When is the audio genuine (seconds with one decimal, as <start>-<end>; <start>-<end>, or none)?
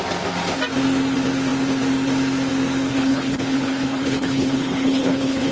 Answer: 0.0-2.9